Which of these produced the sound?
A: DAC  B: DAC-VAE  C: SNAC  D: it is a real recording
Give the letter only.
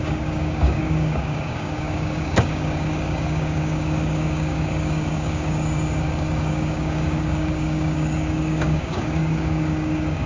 A